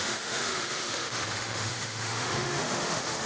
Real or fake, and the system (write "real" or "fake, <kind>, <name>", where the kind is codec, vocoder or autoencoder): fake, autoencoder, DAC-VAE